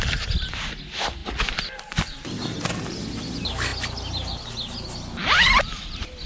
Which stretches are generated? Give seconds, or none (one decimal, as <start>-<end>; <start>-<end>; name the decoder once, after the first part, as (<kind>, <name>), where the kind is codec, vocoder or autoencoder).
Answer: none